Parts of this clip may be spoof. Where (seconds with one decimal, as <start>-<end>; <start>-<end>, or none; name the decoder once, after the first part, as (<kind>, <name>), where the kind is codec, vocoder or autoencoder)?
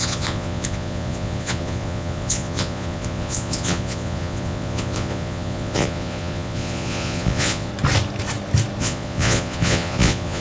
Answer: 0.0-7.7 (vocoder, Vocos); 8.8-10.4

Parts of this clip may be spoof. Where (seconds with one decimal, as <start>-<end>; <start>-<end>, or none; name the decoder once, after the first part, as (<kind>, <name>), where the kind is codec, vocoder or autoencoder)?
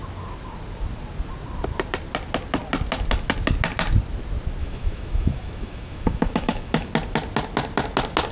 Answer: 4.6-6.9 (autoencoder, DAC-VAE)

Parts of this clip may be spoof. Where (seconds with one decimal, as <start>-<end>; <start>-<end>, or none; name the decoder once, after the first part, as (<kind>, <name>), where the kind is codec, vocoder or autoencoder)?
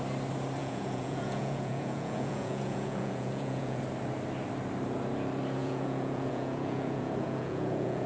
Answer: 0.6-3.8 (vocoder, Vocos); 5.6-8.1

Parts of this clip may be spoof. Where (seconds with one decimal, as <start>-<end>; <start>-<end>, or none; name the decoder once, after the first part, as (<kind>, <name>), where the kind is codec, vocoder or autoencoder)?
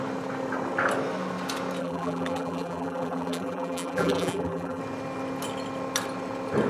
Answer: 1.8-4.8 (vocoder, BigVGAN v2)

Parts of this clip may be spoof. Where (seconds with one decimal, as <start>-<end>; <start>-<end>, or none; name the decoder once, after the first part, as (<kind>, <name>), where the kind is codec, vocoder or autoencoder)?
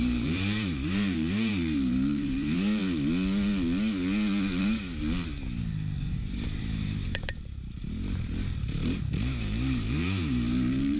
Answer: 0.0-2.8 (vocoder, BigVGAN v2); 6.1-11.0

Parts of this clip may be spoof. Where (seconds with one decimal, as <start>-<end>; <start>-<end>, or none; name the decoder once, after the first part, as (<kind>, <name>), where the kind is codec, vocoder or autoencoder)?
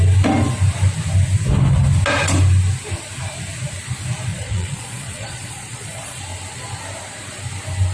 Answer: 4.3-6.2 (vocoder, Vocos)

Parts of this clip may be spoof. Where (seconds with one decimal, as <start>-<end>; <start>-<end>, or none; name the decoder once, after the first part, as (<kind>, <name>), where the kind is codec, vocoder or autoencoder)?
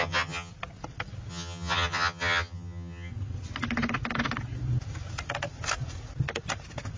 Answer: 0.0-0.5 (vocoder, HiFi-GAN); 1.3-3.1